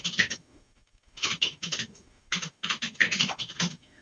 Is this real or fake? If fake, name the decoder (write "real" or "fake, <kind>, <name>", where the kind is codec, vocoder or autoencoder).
fake, autoencoder, DAC-VAE